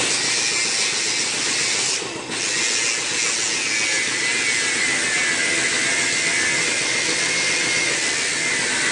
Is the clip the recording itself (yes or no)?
yes